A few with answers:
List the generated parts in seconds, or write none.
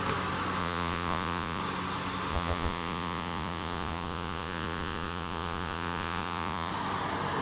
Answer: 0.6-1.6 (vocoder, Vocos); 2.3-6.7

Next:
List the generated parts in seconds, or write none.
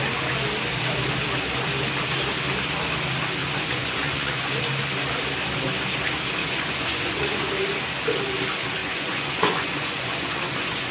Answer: 3.4-4.6 (vocoder, Vocos); 6.4-7.5; 8.8-10.9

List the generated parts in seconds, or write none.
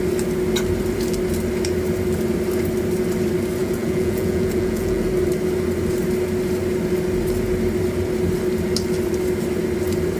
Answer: 3.6-5.1 (vocoder, Vocos)